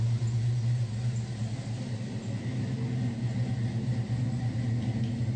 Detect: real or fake real